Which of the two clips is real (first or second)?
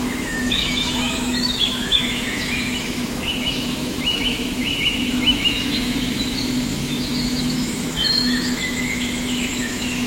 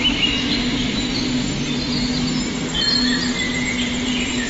second